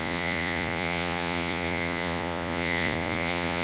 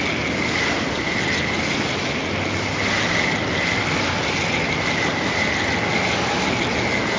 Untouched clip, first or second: second